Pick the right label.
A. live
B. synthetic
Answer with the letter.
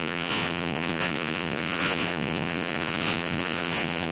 B